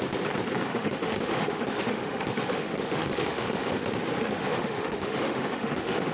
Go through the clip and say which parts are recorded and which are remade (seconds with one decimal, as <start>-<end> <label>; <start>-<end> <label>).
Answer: 0.0-0.7 recorded; 0.7-3.7 remade; 3.7-4.2 recorded; 4.2-6.1 remade